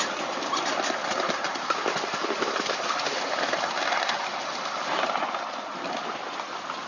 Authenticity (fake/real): real